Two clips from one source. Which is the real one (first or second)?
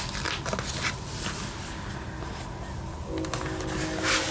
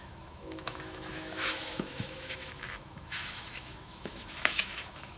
first